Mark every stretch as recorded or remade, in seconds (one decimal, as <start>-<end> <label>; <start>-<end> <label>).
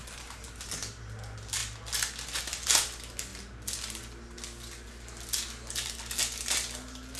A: 0.0-7.2 recorded